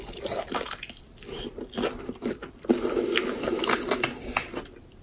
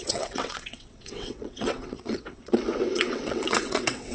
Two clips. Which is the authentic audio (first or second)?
first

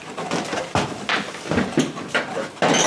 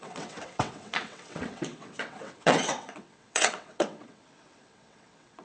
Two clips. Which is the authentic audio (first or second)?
first